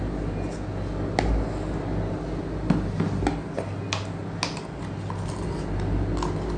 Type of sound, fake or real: real